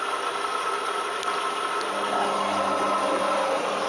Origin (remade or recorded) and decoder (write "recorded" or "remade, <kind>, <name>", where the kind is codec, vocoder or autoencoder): recorded